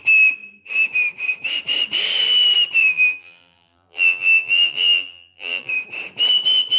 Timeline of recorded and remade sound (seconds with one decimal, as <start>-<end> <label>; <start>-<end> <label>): 0.0-2.8 recorded; 2.8-5.7 remade; 5.7-6.8 recorded